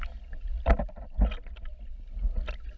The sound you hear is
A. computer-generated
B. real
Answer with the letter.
B